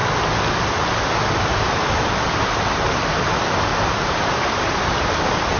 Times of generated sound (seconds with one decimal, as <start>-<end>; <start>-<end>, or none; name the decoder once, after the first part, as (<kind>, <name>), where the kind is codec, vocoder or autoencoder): none